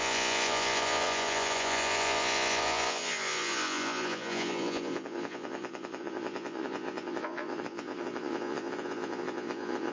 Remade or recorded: remade